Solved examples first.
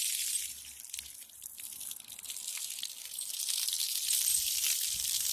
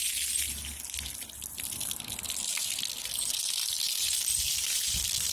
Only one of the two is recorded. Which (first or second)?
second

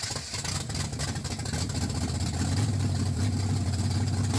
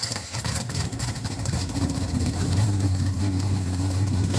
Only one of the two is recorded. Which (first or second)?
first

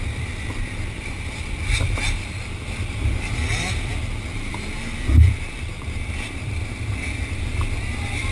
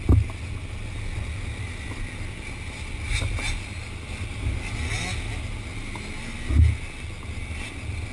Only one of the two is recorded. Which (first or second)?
second